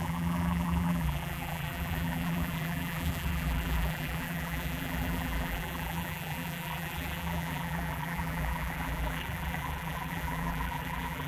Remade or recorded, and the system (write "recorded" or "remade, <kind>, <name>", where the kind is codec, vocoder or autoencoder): remade, vocoder, BigVGAN v2